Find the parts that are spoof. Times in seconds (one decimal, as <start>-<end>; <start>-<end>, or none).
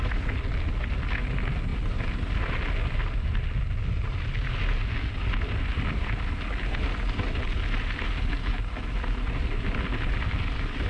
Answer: none